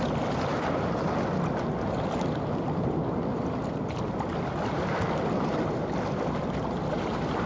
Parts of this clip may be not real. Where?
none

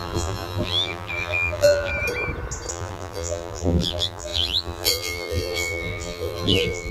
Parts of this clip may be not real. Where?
0.0-1.9 (vocoder, BigVGAN v2); 2.7-6.9

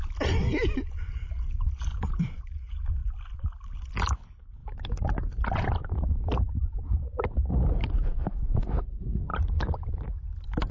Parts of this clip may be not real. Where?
1.9-2.6 (vocoder, BigVGAN v2); 9.3-10.7

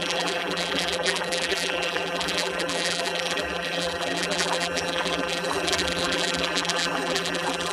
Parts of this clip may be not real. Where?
0.0-7.7 (vocoder, BigVGAN v2)